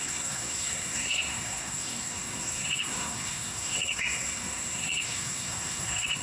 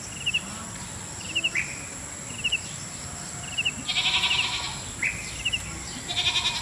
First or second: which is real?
second